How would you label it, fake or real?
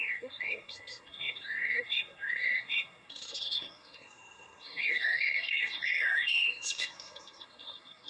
fake